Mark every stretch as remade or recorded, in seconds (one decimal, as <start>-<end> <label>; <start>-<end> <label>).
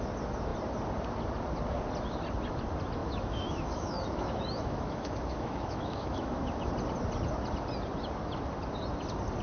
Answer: 0.0-3.0 recorded; 3.0-6.7 remade; 6.7-9.4 recorded